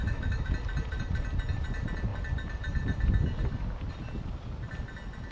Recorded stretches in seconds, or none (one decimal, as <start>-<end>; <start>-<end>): 0.5-5.3